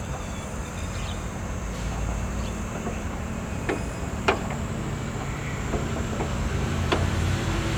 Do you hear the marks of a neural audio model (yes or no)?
yes